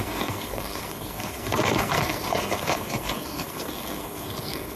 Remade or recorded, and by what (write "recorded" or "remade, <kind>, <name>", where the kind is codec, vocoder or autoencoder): remade, codec, SNAC